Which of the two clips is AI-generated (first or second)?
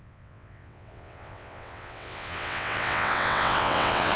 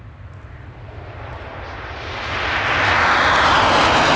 first